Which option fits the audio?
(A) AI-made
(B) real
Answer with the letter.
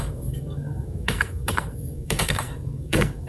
A